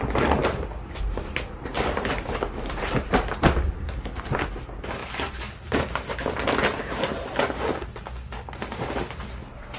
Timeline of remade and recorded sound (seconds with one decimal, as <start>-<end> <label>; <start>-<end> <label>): 0.0-0.4 recorded; 0.4-3.2 remade; 3.2-9.8 recorded

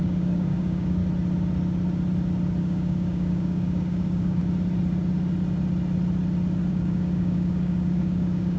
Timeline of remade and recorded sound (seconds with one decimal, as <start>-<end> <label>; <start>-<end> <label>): 0.0-1.0 remade; 1.0-2.6 recorded; 2.6-4.4 remade; 4.4-6.7 recorded; 6.7-8.6 remade

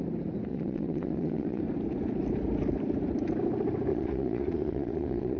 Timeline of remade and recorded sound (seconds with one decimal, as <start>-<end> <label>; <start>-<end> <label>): 0.0-0.5 recorded; 0.5-1.6 remade; 1.6-3.9 recorded; 3.9-5.4 remade

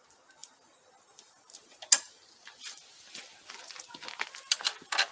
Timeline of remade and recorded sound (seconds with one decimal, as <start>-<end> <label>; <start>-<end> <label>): 0.0-5.1 recorded

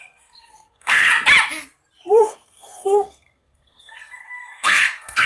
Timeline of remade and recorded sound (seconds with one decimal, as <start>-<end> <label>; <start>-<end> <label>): 0.0-1.1 remade; 1.1-2.2 recorded; 2.2-5.3 remade